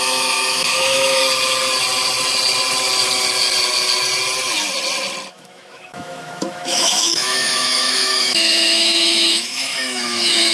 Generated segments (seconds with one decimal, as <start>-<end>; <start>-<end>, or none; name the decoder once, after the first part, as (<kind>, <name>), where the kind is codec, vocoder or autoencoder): 0.0-1.2 (autoencoder, DAC-VAE); 5.3-10.5